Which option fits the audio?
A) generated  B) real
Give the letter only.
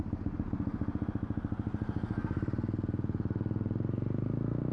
B